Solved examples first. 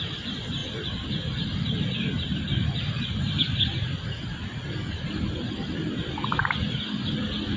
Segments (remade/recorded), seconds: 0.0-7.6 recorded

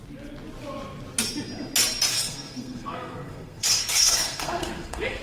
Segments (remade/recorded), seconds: 0.0-2.1 recorded; 2.1-5.2 remade

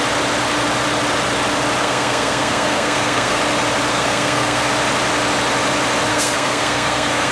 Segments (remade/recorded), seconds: 0.0-1.8 recorded; 1.8-3.4 remade; 3.4-3.9 recorded; 3.9-4.7 remade; 4.7-6.1 recorded; 6.1-7.3 remade

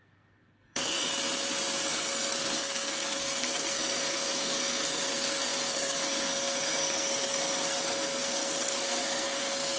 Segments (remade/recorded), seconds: 0.0-1.1 remade; 1.1-1.9 recorded; 1.9-9.8 remade

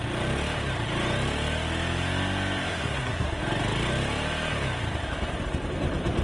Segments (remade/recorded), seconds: 0.0-2.7 recorded; 2.7-3.4 remade; 3.4-6.2 recorded

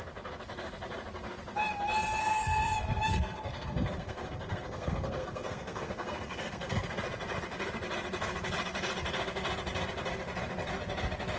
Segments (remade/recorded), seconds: 0.0-2.2 recorded; 2.2-6.9 remade; 6.9-11.4 recorded